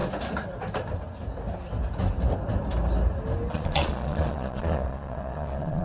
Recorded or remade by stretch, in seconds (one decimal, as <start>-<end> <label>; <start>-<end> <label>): 0.0-3.5 recorded; 3.5-5.8 remade